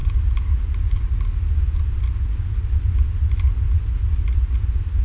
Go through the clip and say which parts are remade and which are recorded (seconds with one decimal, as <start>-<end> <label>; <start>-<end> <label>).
0.0-5.0 recorded